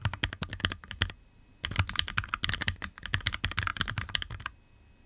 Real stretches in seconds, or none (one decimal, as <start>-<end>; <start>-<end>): 0.0-5.1